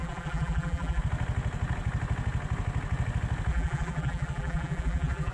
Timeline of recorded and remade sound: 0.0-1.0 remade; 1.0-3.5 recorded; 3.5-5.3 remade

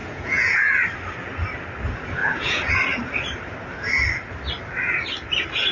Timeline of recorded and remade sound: 0.0-0.7 remade; 0.7-2.2 recorded; 2.2-2.7 remade; 2.7-5.7 recorded

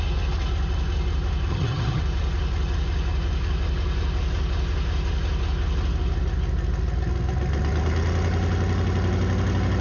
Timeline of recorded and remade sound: 0.0-1.5 recorded; 1.5-2.0 remade; 2.0-9.8 recorded

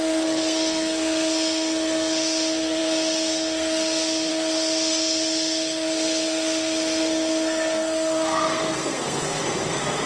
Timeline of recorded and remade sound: 0.0-10.1 remade

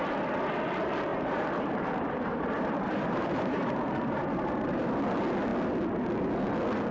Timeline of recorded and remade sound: 0.0-1.1 recorded; 1.1-4.9 remade; 4.9-6.9 recorded

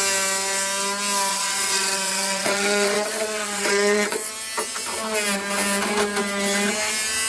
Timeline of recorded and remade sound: 0.0-1.3 recorded; 1.3-4.3 remade; 4.3-7.3 recorded

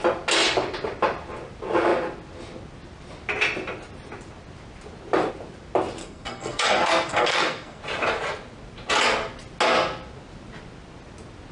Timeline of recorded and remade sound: 0.0-6.0 recorded; 6.0-7.8 remade; 7.8-11.5 recorded